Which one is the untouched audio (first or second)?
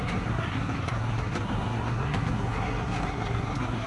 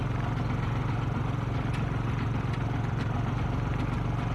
second